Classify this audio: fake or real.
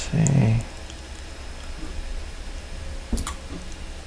real